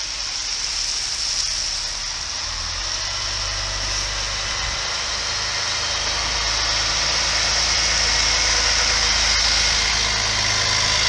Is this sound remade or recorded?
recorded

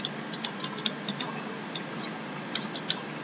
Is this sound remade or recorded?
recorded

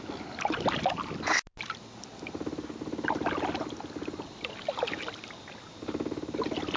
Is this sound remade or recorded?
recorded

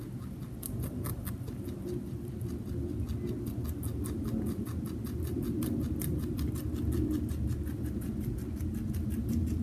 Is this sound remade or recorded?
recorded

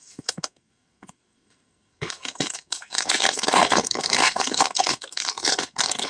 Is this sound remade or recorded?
remade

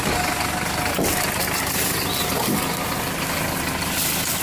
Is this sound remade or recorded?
recorded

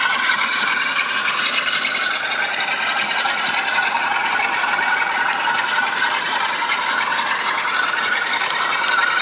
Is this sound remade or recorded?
remade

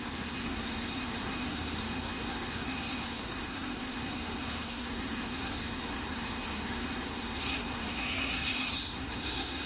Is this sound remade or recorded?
remade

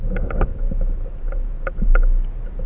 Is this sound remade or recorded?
recorded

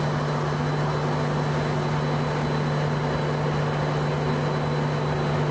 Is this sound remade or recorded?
recorded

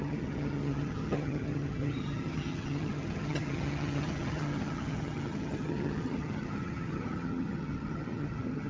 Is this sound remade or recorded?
remade